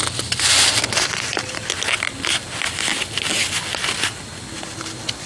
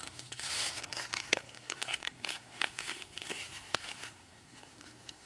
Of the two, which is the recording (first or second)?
first